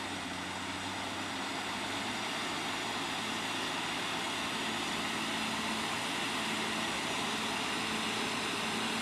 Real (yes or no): yes